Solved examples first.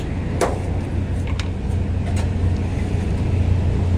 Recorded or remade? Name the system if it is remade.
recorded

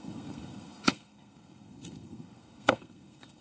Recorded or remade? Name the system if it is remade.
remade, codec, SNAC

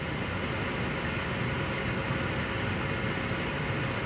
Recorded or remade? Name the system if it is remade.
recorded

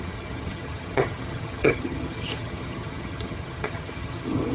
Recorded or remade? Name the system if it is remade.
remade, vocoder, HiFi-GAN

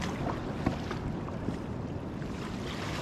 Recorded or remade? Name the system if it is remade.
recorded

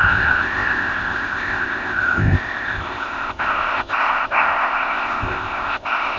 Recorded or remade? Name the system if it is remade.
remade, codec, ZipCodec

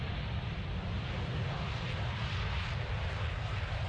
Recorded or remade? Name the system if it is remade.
remade, vocoder, BigVGAN v2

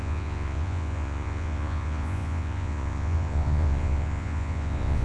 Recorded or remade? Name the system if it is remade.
remade, vocoder, Vocos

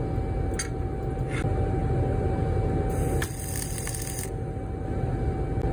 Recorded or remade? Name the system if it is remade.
recorded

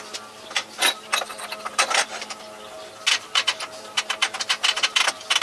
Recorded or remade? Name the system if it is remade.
recorded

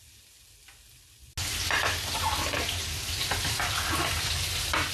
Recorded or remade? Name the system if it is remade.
recorded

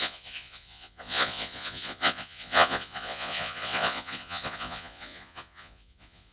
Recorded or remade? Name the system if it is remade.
remade, vocoder, Vocos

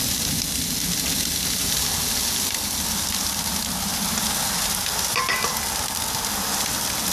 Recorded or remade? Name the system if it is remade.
recorded